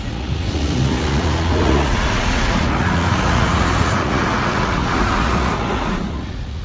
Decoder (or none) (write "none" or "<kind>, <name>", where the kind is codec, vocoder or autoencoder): vocoder, Vocos